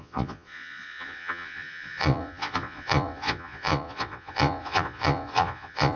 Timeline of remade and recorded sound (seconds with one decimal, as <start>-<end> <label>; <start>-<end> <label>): 0.0-6.0 remade